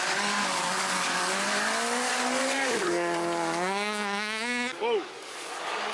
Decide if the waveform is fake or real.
fake